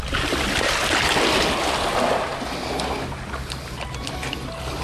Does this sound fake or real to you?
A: real